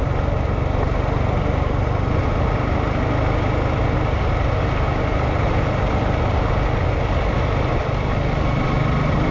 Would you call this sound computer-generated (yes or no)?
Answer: no